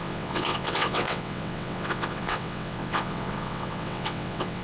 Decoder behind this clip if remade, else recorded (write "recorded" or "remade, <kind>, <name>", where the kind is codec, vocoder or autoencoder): remade, vocoder, WaveNeXt